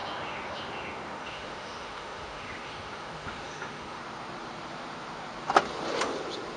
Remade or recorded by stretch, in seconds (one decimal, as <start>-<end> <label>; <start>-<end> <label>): 0.0-4.0 remade; 4.0-6.6 recorded